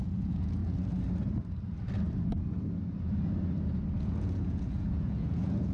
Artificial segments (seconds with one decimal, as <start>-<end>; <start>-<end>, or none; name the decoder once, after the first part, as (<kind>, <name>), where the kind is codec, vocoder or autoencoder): 0.0-0.6 (vocoder, Vocos); 4.0-5.7